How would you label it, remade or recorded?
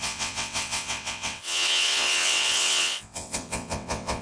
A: remade